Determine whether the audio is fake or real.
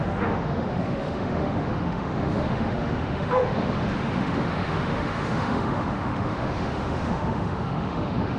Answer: fake